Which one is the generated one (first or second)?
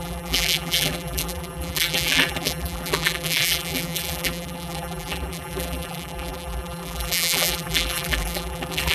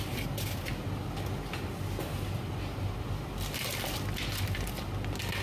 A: first